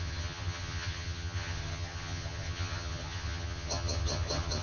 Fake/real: fake